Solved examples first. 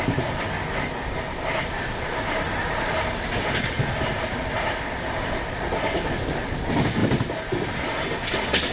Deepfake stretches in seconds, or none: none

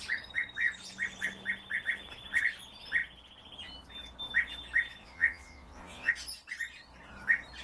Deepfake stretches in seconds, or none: 5.0-6.1

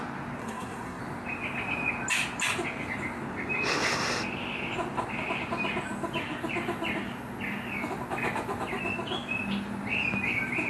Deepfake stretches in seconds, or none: 0.4-1.0